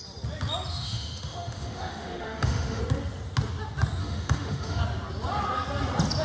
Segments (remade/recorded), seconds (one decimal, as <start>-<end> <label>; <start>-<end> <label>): 0.0-0.7 recorded; 0.7-2.8 remade; 2.8-4.0 recorded; 4.0-4.8 remade; 4.8-6.2 recorded